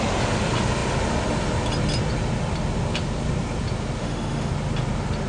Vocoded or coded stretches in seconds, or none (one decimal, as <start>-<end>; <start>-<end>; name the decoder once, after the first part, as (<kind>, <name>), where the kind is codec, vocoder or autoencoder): 4.0-4.5 (autoencoder, DAC-VAE)